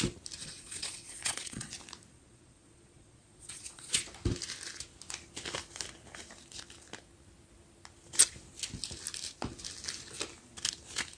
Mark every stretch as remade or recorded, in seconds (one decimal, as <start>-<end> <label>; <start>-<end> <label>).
0.0-0.4 recorded; 0.4-1.7 remade; 1.7-2.1 recorded; 2.1-4.0 remade; 4.0-11.2 recorded